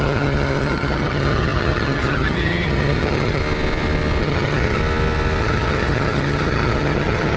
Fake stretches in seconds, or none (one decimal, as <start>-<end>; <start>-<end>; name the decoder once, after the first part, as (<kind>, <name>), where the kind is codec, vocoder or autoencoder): 0.0-3.4 (vocoder, HiFi-GAN); 4.2-4.8; 5.4-7.4